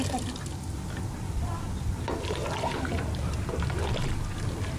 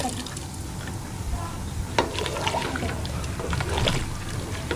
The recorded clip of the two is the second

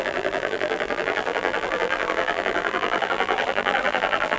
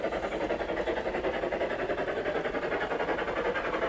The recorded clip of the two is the second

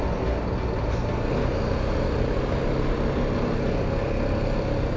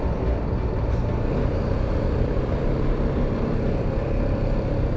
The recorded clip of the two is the first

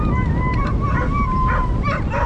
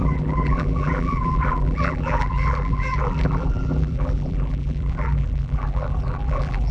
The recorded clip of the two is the first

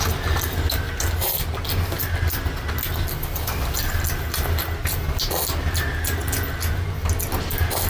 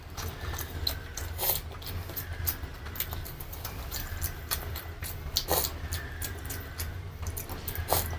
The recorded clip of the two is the first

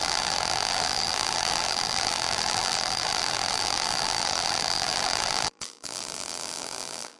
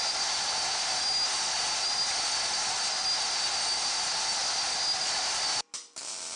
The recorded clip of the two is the second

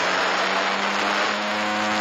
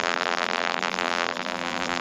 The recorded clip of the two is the first